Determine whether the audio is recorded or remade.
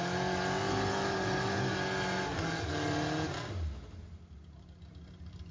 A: recorded